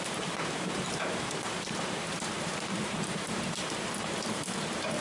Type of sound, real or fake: fake